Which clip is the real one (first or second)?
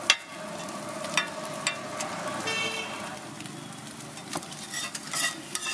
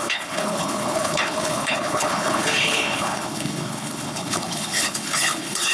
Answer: first